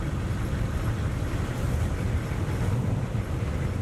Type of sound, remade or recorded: remade